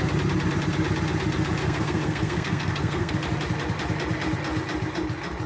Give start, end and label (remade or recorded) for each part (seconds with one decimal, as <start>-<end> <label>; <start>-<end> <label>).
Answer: 0.0-1.6 recorded; 1.6-3.1 remade; 3.1-5.5 recorded